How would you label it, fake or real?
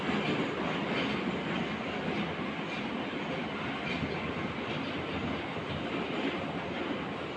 real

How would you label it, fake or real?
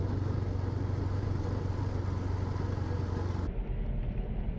real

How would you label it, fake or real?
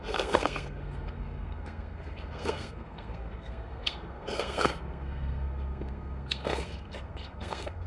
fake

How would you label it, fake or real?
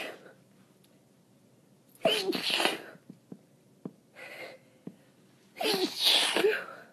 real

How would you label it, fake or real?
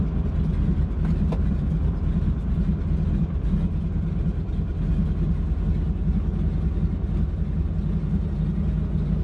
real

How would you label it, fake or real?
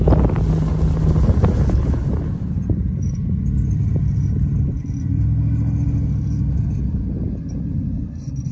real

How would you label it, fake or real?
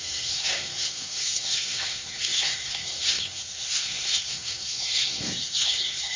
fake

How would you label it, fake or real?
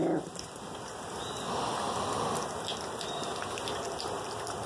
real